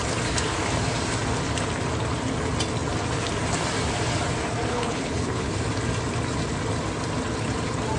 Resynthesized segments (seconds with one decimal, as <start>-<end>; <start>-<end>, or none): 4.7-5.5